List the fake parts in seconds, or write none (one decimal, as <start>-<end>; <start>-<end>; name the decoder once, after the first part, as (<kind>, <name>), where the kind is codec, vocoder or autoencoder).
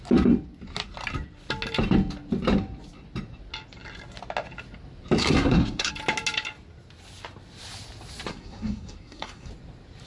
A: 5.2-5.9 (codec, SNAC); 8.3-9.5